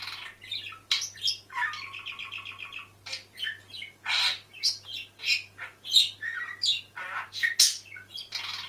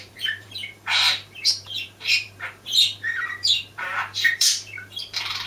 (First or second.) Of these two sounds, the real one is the first